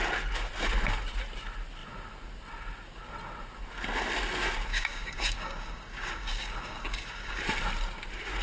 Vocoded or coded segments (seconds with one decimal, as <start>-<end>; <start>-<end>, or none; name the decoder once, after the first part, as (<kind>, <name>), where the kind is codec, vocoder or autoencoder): 4.7-7.4 (codec, DAC)